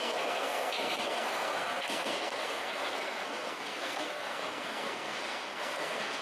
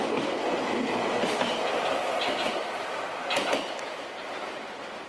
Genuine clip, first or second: second